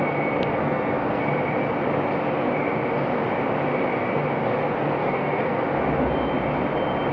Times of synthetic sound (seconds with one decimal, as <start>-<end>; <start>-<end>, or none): 0.6-1.2; 5.0-5.6